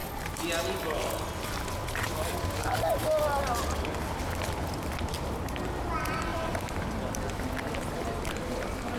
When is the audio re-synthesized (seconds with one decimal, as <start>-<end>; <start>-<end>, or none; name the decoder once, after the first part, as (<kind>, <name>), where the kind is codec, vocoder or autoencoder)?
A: 6.3-6.8 (vocoder, BigVGAN v2)